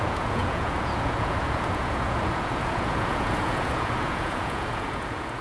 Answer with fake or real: fake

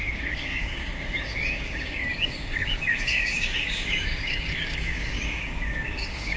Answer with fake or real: fake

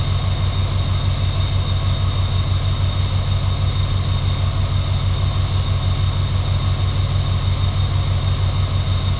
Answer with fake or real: real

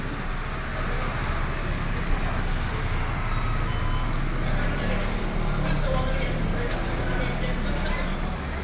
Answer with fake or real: real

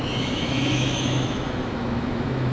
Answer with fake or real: fake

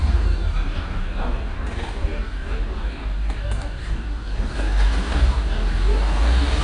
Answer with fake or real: fake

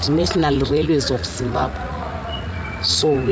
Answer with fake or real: fake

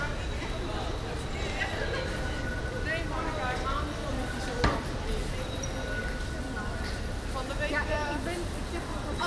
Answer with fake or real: real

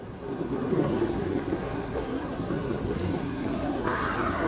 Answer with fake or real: fake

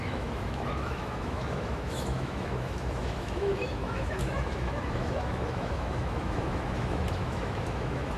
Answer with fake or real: fake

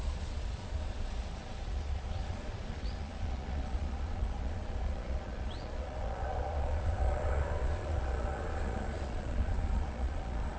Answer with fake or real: fake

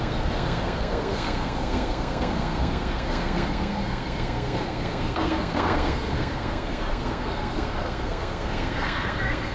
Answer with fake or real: fake